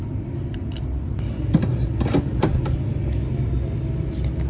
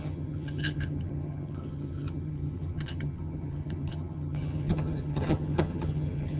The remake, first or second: second